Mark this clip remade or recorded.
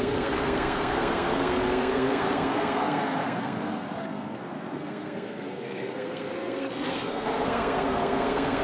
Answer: remade